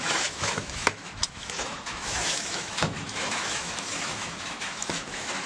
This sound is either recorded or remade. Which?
remade